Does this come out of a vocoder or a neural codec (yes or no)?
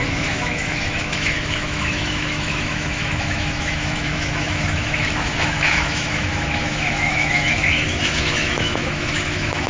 yes